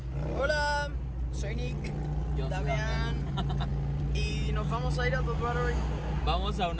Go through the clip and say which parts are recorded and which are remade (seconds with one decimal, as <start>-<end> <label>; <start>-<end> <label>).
0.0-6.8 recorded